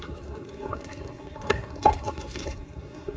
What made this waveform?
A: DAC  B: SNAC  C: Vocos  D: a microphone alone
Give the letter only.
B